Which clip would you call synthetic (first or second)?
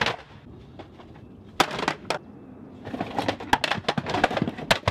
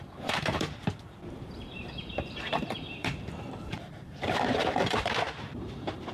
second